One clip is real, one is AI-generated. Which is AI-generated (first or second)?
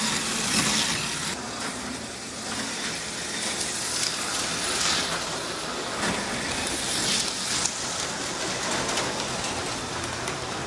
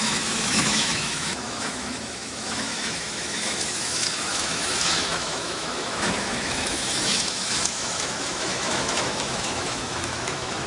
second